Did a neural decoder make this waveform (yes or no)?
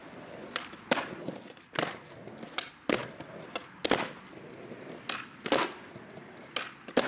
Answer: no